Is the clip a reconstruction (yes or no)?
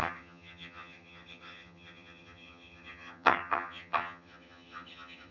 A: yes